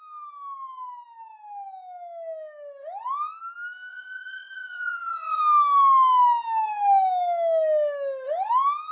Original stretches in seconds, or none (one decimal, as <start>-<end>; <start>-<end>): 0.0-3.9; 5.4-8.9